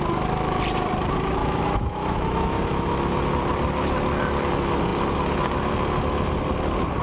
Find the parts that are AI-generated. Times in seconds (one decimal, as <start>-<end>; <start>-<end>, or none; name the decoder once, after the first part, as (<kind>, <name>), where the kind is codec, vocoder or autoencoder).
1.4-3.2 (autoencoder, DAC-VAE)